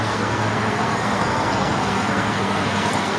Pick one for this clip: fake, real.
fake